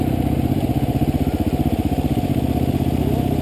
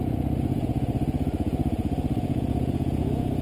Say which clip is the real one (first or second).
first